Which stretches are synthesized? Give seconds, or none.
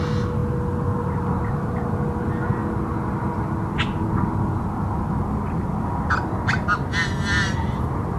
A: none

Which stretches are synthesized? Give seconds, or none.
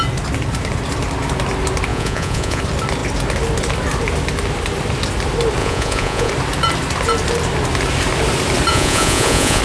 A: 1.9-2.6 (vocoder, Vocos); 5.6-6.3; 8.7-9.6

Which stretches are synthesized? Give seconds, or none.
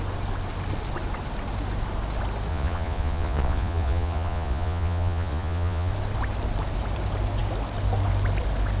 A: 2.5-5.9 (vocoder, Vocos)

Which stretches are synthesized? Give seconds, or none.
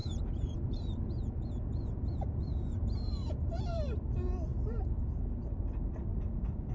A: 0.0-4.0 (vocoder, Vocos); 4.5-5.1; 6.1-6.7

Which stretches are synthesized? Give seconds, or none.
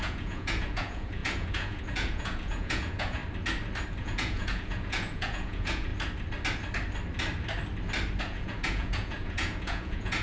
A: 0.0-3.2 (vocoder, Vocos); 4.0-5.9; 8.2-10.2